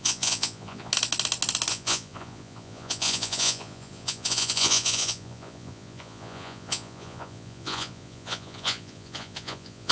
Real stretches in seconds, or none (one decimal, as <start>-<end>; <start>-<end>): 0.9-1.7